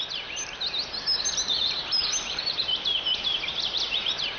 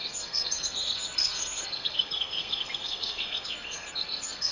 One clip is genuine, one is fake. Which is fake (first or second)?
second